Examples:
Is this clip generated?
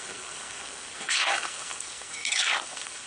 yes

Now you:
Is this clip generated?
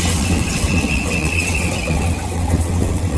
yes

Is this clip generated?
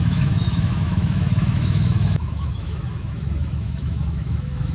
yes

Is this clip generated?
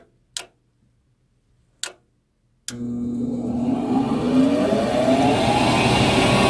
no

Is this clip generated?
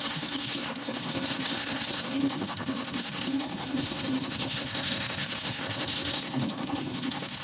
yes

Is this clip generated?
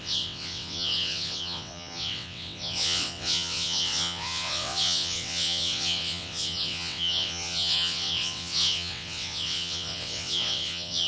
yes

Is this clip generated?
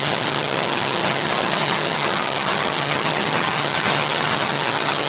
yes